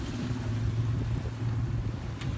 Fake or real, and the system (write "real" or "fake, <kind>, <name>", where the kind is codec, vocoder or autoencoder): real